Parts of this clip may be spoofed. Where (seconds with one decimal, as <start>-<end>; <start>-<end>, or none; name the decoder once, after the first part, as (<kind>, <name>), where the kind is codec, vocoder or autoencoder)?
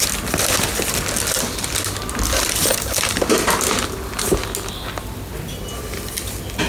none